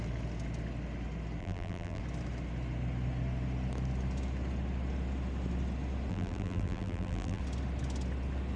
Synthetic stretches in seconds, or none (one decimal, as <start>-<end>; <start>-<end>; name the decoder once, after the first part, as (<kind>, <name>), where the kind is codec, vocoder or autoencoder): 1.4-2.0 (vocoder, BigVGAN v2); 6.1-7.4